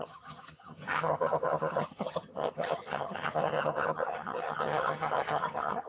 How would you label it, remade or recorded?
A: remade